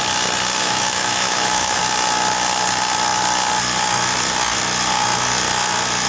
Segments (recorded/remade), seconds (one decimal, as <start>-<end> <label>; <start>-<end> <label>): 0.0-0.6 recorded; 0.6-1.8 remade; 1.8-6.1 recorded